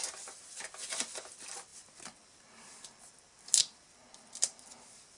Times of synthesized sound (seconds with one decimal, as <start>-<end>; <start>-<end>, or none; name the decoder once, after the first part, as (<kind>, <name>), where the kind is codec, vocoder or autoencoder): none